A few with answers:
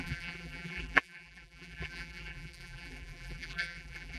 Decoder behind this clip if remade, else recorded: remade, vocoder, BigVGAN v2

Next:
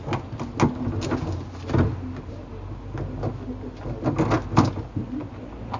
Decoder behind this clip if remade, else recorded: recorded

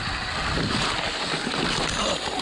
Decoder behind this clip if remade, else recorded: recorded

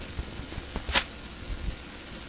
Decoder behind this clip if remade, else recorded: recorded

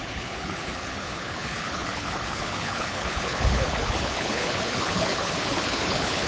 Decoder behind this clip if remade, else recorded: remade, codec, HILCodec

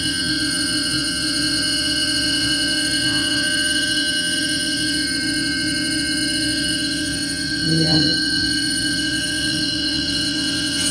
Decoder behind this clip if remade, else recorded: remade, vocoder, WaveNeXt